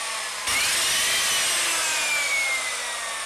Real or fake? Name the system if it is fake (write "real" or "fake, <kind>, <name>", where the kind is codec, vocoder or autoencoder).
real